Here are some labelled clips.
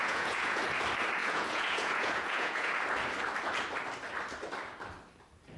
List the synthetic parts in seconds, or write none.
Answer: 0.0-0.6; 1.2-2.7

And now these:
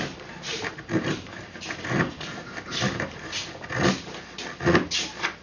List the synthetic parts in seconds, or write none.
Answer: 0.5-3.7